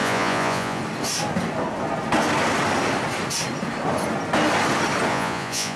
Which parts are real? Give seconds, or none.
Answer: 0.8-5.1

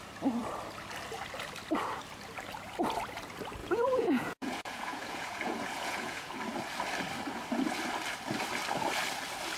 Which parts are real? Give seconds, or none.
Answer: 0.0-3.6; 6.3-9.6